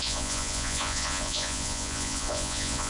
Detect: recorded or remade remade